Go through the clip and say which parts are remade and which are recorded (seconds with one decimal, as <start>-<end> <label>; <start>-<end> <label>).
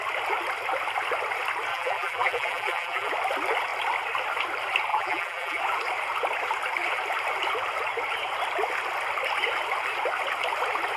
0.0-1.7 recorded; 1.7-3.1 remade; 3.1-4.9 recorded; 4.9-5.6 remade; 5.6-11.0 recorded